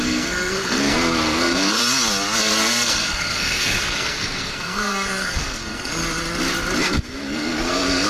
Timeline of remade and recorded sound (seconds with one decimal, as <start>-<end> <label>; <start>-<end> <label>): 0.0-1.8 remade; 1.8-2.4 recorded; 2.4-6.0 remade; 6.0-6.8 recorded; 6.8-8.1 remade